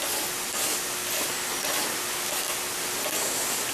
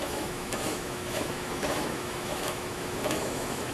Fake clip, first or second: second